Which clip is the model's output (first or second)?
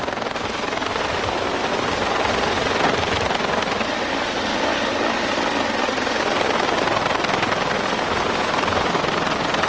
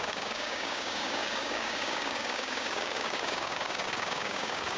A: second